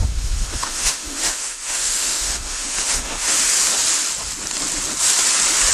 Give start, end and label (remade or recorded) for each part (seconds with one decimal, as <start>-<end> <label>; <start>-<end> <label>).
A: 0.0-3.4 remade; 3.4-5.7 recorded